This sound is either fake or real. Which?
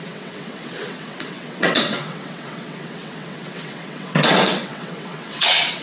fake